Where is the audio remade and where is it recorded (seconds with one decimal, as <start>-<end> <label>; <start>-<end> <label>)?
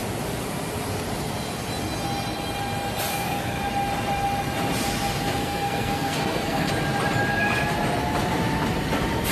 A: 0.0-3.1 recorded; 3.1-3.6 remade; 3.6-5.4 recorded; 5.4-6.7 remade; 6.7-9.3 recorded